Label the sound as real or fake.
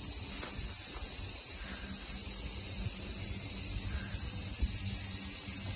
real